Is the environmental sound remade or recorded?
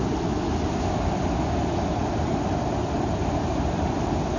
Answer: recorded